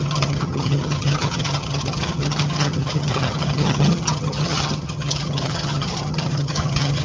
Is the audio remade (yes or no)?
yes